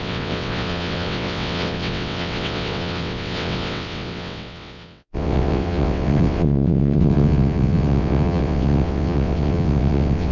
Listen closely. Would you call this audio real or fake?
fake